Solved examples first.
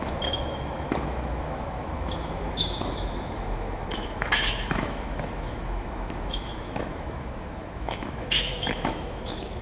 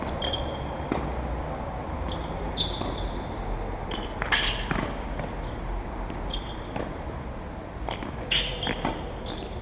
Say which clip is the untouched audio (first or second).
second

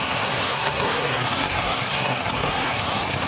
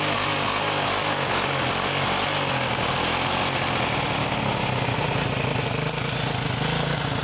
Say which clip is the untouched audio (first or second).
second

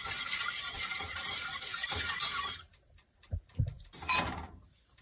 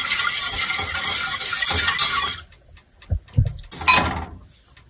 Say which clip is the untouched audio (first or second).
second